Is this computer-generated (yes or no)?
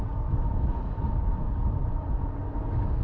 no